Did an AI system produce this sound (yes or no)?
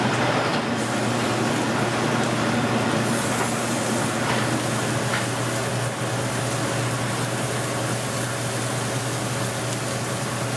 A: no